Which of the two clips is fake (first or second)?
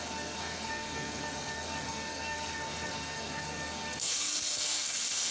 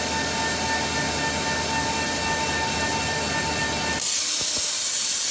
first